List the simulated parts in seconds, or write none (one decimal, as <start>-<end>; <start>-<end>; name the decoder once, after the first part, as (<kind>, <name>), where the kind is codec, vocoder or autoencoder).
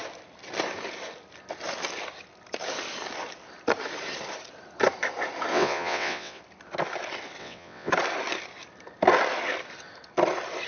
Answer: 5.5-6.4 (vocoder, WaveNeXt); 7.4-7.9